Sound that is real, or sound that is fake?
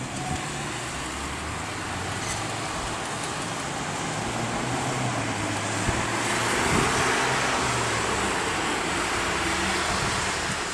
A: real